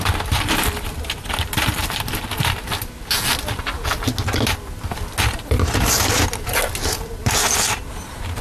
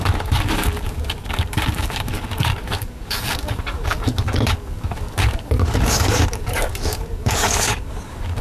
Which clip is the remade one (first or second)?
second